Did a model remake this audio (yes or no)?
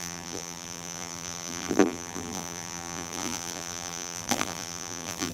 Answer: yes